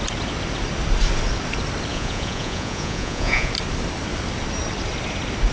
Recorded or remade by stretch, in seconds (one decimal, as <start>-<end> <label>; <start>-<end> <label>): 0.0-1.9 recorded; 1.9-3.5 remade; 3.5-5.5 recorded